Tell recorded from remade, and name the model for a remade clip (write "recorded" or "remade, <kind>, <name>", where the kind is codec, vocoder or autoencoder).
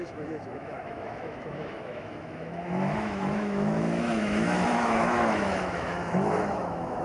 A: remade, autoencoder, DAC-VAE